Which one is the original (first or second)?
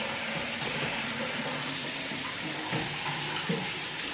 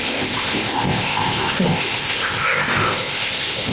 first